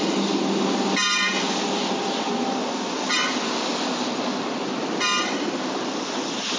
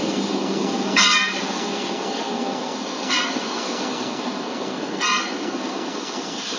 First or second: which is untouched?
first